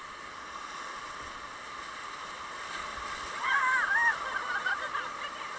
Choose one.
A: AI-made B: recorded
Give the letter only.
B